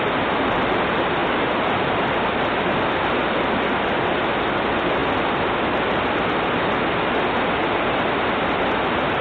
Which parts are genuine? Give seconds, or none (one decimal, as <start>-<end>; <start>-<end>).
0.0-1.2; 2.0-9.2